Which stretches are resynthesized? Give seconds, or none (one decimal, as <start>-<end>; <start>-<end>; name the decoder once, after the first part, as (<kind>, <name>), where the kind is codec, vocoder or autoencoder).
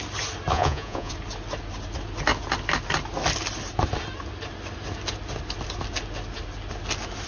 0.5-1.1 (vocoder, Vocos)